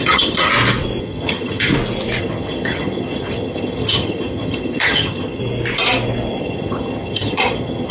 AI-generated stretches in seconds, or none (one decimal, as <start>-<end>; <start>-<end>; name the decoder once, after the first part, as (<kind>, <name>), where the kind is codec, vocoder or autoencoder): 0.0-0.5 (vocoder, HiFi-GAN); 1.0-1.7; 2.2-5.4; 6.4-7.9